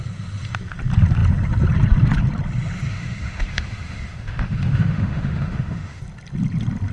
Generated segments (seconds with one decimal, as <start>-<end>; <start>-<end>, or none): 2.9-6.0